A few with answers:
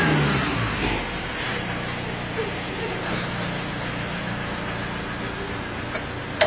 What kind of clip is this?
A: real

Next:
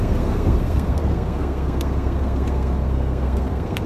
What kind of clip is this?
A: fake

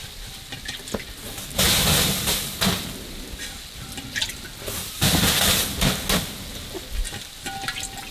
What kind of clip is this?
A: real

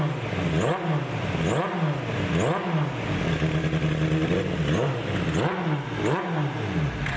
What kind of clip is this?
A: real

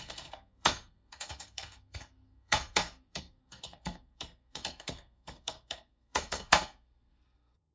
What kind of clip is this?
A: fake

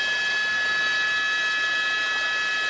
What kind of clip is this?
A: real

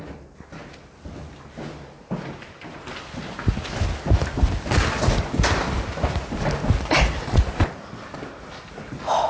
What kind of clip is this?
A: real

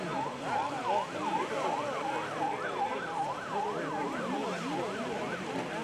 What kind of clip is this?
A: real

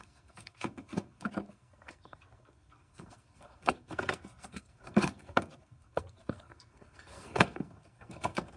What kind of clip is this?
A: fake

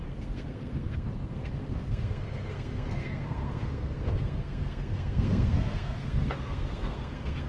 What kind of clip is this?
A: fake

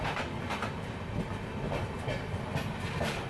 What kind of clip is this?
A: real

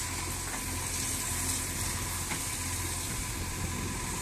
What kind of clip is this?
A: real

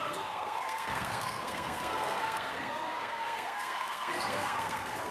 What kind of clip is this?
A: fake